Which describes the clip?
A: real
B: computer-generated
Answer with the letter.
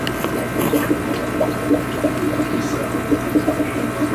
A